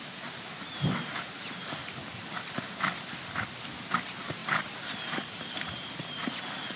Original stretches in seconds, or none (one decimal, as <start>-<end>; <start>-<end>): 0.0-6.8